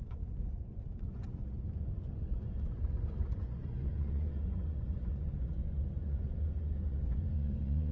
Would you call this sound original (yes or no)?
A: no